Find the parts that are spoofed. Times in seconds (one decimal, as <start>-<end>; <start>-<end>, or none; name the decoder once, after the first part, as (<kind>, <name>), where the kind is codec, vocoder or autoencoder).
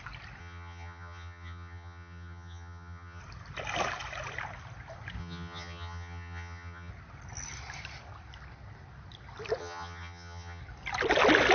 0.4-3.2 (vocoder, HiFi-GAN); 5.2-6.9; 9.6-10.6